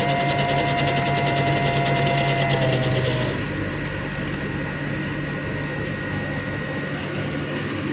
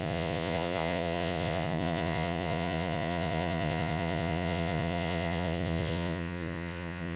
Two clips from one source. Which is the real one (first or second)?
first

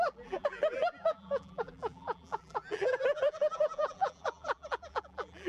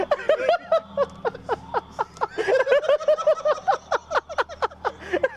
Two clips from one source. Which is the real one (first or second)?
second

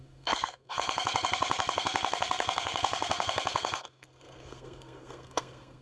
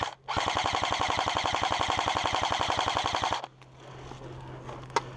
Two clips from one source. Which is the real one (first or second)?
second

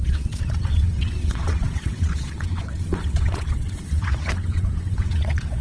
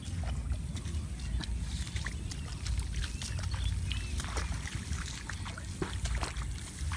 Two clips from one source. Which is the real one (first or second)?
second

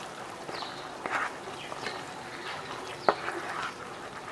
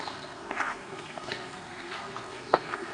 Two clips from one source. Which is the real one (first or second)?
first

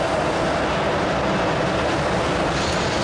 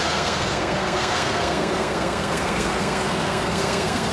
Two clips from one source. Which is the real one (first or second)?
first